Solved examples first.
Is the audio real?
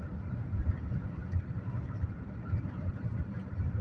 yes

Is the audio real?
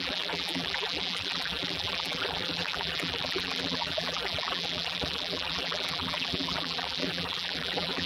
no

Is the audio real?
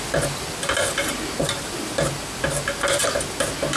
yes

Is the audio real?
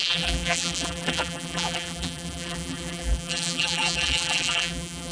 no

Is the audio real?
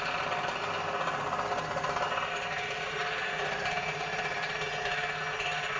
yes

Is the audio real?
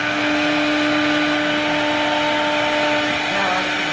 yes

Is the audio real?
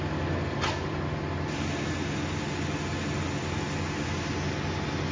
yes